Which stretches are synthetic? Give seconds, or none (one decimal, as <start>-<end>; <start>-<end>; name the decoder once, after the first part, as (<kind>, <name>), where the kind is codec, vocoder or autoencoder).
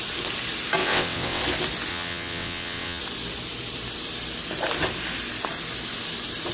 0.8-1.4 (vocoder, WaveNeXt); 1.9-3.0